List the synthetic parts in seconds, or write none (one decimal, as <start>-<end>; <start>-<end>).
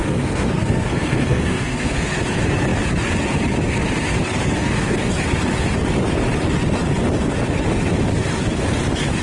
0.0-2.2; 4.6-5.1